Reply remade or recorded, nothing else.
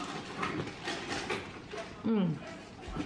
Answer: recorded